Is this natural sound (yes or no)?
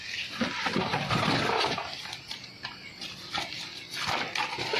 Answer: yes